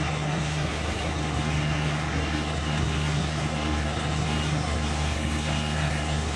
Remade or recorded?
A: remade